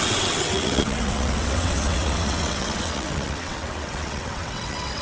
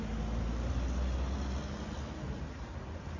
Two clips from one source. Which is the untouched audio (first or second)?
second